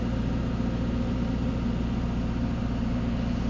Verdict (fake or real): real